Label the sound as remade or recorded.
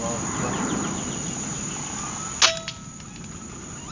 recorded